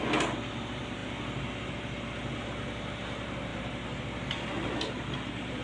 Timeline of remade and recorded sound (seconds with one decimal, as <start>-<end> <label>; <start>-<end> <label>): 0.0-5.6 recorded